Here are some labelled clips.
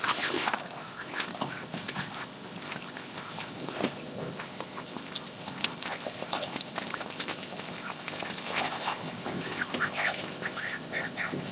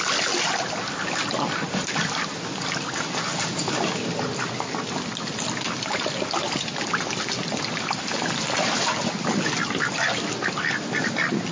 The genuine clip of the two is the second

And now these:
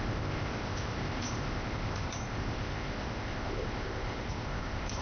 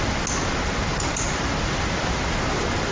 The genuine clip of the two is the second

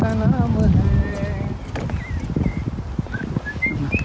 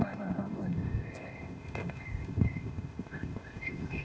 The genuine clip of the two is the first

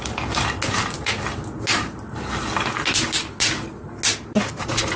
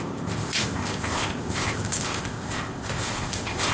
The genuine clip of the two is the first